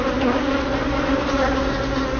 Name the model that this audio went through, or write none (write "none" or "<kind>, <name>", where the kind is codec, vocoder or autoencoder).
none